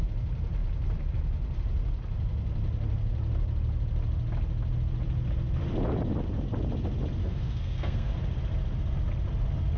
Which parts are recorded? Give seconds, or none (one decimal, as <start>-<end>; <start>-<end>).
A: 0.0-7.2; 8.1-9.8